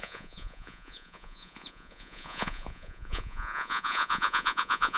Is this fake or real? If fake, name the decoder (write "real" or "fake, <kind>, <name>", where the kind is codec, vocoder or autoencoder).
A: fake, vocoder, Vocos